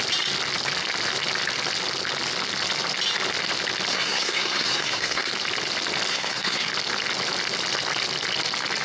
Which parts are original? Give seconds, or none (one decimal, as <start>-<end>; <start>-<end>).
0.0-3.9; 5.3-6.1; 6.7-8.8